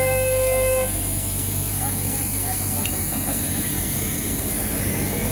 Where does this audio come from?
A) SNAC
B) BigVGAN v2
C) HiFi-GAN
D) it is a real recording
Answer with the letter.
A